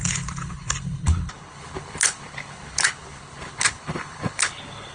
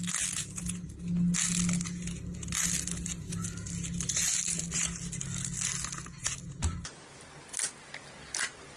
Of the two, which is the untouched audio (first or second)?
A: second